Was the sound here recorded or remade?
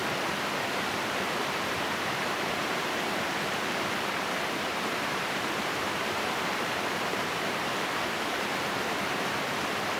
remade